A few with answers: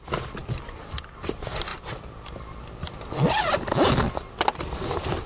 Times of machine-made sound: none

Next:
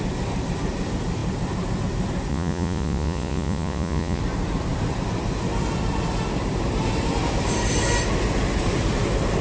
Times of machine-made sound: 2.3-4.2 (vocoder, Vocos)

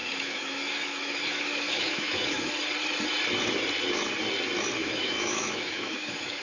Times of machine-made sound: 0.0-2.5 (autoencoder, DAC-VAE); 4.8-6.4

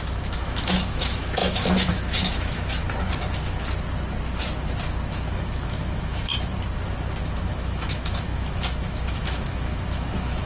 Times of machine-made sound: 0.0-2.8 (autoencoder, DAC-VAE); 5.1-6.3; 7.2-10.5

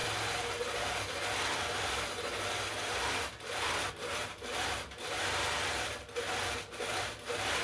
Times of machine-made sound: 3.9-4.5 (vocoder, BigVGAN v2)

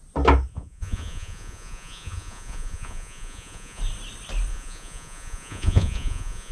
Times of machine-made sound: 0.5-3.8 (vocoder, Vocos); 4.5-6.5

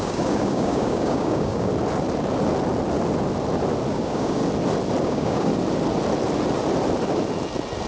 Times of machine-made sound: 0.0-1.7 (codec, DAC); 3.9-4.4; 5.0-5.5

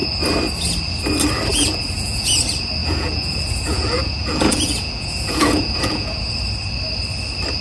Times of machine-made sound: 1.5-2.3 (vocoder, Vocos); 2.8-6.3